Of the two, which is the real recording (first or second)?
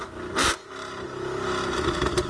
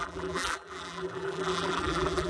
first